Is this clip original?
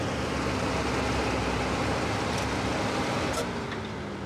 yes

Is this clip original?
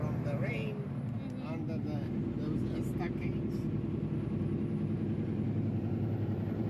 yes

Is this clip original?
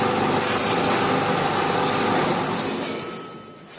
yes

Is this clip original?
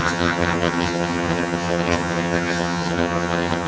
no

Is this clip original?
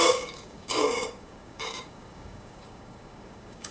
no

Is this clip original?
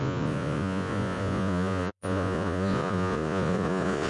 no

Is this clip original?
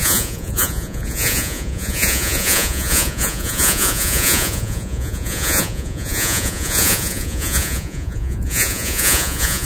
no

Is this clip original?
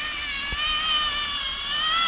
yes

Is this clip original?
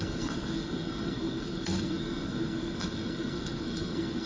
no